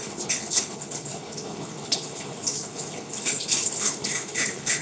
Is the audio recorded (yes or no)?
no